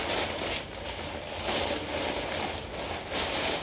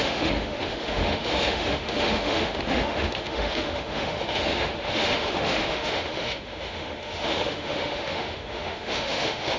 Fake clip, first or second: second